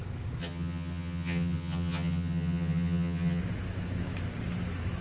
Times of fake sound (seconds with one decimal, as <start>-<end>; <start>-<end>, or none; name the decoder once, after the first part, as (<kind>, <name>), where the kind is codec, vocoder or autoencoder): 0.4-3.4 (vocoder, HiFi-GAN)